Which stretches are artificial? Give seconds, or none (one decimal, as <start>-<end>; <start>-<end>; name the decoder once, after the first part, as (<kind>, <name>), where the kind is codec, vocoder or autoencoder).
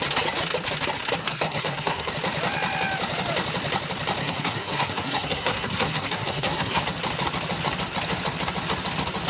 1.2-2.1 (codec, SNAC); 4.2-6.8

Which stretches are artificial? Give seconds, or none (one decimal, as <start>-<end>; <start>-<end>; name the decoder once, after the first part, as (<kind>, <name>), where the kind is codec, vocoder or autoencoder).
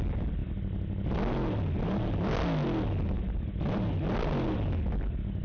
none